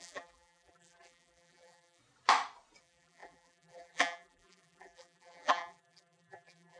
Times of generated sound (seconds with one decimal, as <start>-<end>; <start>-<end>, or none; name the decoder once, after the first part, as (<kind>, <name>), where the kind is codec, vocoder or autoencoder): 0.0-2.0 (vocoder, BigVGAN v2); 2.8-6.8